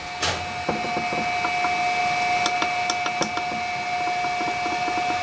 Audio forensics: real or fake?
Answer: real